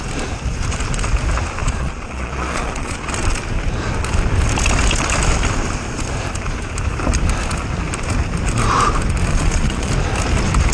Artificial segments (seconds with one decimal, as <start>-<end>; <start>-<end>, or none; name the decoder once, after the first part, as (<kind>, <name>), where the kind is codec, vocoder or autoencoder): 1.6-3.1 (vocoder, Vocos); 9.3-9.9